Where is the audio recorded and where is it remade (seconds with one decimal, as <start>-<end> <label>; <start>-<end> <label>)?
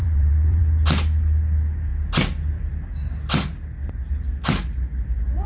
0.0-0.6 remade; 0.6-5.5 recorded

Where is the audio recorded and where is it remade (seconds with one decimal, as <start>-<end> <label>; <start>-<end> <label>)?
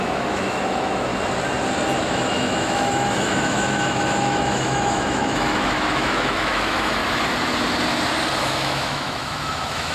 0.0-1.1 remade; 1.1-2.0 recorded; 2.0-7.0 remade; 7.0-8.4 recorded; 8.4-9.9 remade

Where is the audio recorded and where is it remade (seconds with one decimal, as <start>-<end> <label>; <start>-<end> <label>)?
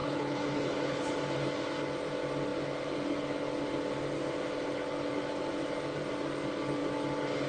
0.0-1.1 remade; 1.1-7.5 recorded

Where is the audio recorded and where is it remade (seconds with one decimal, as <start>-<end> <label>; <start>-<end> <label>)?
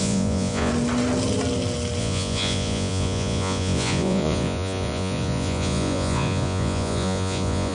0.0-0.7 remade; 0.7-2.0 recorded; 2.0-7.7 remade